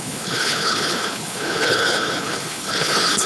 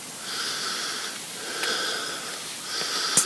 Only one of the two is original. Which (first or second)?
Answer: second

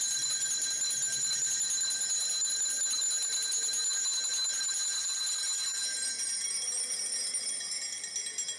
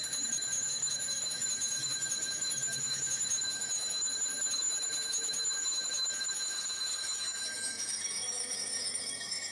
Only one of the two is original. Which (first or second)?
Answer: first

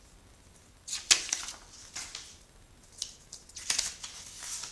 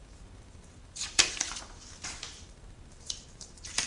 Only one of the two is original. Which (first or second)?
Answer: first